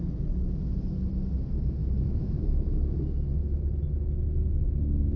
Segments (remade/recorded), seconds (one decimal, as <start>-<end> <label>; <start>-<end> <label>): 0.0-1.8 recorded; 1.8-2.4 remade; 2.4-5.2 recorded